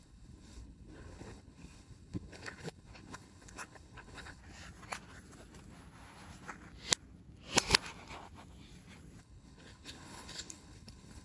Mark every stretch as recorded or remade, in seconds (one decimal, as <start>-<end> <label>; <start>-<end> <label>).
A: 0.0-4.4 remade; 4.4-9.2 recorded; 9.2-11.2 remade